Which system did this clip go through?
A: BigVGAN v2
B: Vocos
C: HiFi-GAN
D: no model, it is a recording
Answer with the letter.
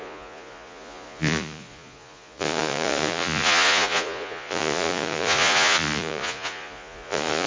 B